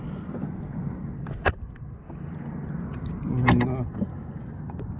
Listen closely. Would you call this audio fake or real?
real